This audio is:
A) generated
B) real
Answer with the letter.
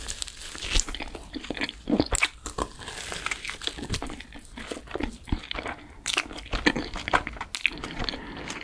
B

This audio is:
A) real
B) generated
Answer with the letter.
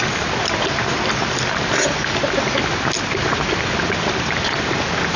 A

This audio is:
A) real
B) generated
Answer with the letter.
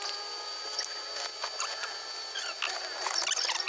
A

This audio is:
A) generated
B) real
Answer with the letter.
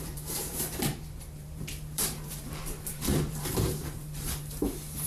A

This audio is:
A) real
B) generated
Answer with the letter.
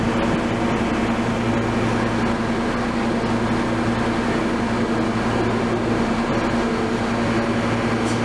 A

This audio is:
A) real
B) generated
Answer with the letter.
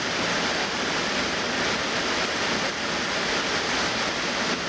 A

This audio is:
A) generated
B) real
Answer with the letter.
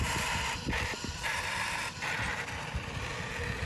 A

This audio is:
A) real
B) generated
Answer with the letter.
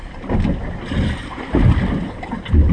A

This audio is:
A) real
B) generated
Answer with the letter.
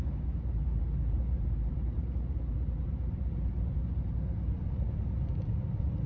B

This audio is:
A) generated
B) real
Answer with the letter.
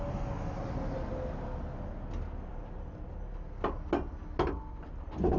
B